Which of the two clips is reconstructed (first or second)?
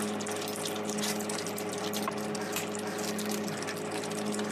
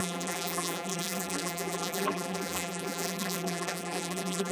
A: second